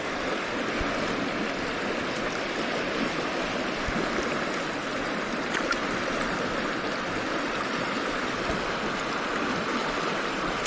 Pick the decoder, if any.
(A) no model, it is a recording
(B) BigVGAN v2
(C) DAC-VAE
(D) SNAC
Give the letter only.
A